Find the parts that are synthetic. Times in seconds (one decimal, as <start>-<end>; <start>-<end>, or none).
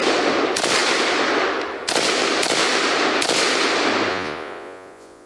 4.1-5.3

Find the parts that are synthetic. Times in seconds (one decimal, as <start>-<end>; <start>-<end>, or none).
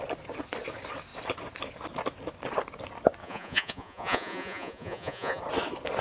3.2-5.4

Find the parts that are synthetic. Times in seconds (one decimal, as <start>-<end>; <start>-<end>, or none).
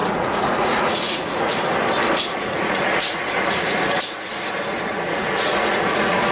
0.0-1.5; 2.1-4.3; 4.9-6.3